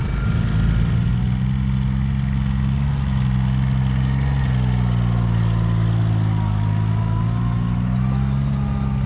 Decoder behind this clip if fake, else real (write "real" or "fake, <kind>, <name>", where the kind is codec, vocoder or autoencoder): real